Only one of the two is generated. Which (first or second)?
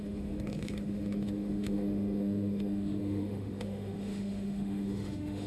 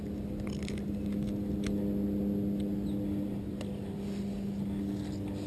first